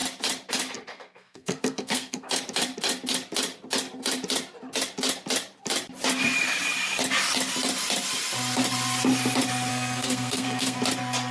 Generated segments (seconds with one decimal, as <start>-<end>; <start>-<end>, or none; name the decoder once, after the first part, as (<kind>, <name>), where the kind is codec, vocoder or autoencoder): 0.9-2.4 (codec, SNAC); 9.7-10.8